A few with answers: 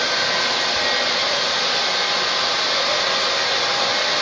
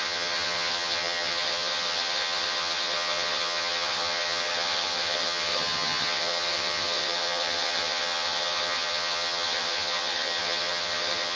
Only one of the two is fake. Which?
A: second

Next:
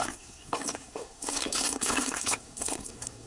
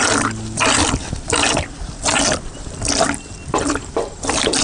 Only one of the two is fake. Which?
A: first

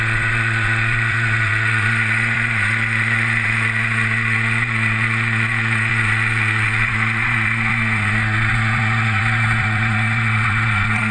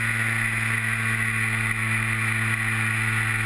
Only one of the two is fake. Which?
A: first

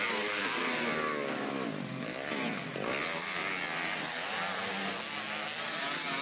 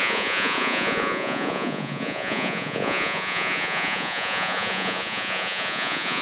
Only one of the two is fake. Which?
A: second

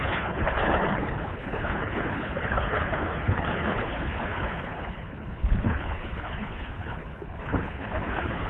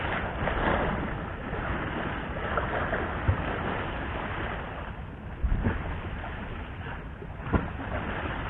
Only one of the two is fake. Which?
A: first